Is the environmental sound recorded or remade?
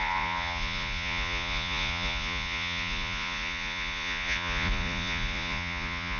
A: remade